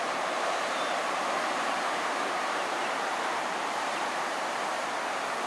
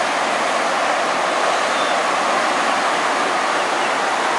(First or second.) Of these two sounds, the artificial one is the first